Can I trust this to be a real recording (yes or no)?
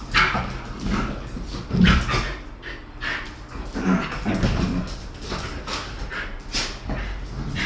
yes